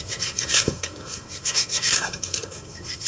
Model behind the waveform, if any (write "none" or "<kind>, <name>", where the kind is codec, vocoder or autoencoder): codec, SNAC